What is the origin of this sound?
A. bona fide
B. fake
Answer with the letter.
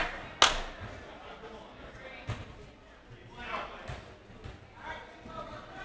A